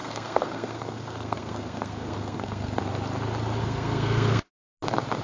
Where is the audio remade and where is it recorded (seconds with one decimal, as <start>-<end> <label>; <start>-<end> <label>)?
0.0-2.8 remade; 2.8-3.6 recorded; 3.6-4.5 remade; 4.5-5.2 recorded